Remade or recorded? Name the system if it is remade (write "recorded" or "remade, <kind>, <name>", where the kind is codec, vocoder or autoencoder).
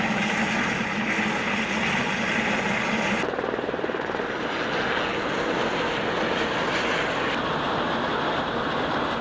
recorded